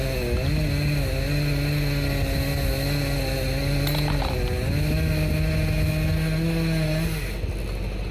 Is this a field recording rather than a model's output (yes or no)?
yes